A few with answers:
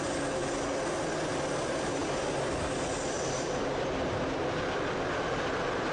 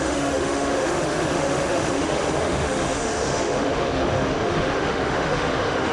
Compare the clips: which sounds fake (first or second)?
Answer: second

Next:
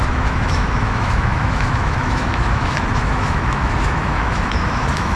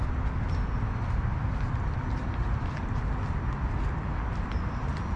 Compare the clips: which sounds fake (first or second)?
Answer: first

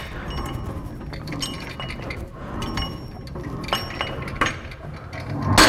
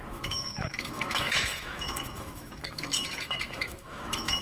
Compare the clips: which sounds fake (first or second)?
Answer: second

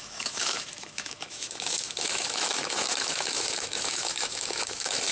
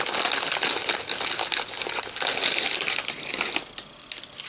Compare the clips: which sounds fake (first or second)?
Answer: first